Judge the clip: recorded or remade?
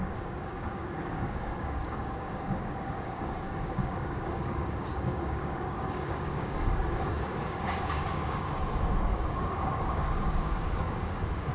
remade